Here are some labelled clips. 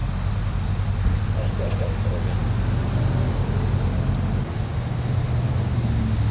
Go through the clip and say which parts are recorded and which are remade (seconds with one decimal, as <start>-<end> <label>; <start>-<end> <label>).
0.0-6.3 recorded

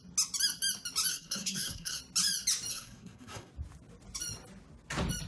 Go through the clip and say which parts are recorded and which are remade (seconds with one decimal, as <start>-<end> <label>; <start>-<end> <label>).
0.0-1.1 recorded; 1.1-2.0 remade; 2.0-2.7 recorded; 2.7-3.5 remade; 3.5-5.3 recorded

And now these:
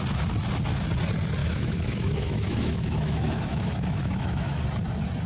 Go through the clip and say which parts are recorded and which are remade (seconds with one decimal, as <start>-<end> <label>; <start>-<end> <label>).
0.0-1.4 recorded; 1.4-4.6 remade; 4.6-5.3 recorded